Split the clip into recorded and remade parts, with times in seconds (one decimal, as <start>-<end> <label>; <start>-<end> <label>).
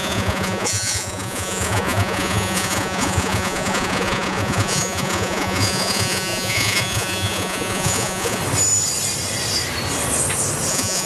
0.0-8.4 remade; 8.4-10.7 recorded; 10.7-11.1 remade